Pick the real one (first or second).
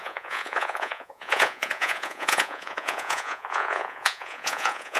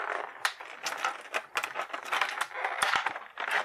second